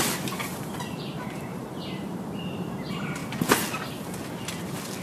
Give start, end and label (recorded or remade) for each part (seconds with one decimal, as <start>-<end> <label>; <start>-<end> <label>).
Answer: 0.0-0.5 recorded; 0.5-2.4 remade; 2.4-5.0 recorded